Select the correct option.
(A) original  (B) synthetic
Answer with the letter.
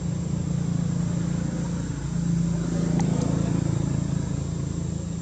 A